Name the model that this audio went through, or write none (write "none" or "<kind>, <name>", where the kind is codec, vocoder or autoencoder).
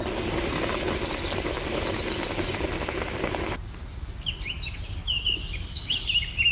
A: none